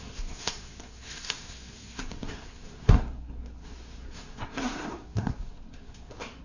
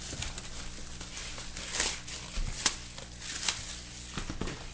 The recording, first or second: second